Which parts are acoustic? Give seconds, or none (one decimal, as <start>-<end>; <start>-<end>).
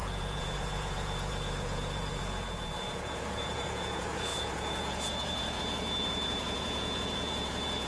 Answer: none